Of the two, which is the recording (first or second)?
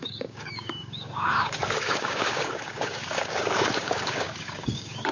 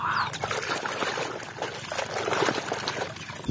second